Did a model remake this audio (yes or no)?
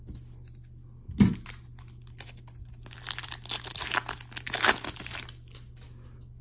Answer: no